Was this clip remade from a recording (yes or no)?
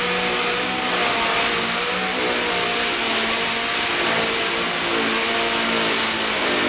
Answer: no